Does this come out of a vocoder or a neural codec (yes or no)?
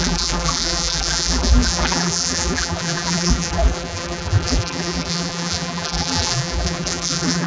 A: yes